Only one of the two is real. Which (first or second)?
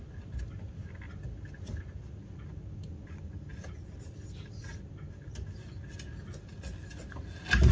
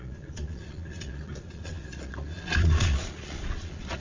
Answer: first